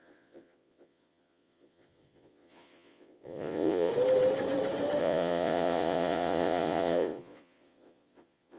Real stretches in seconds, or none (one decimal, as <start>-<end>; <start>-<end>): 3.9-5.0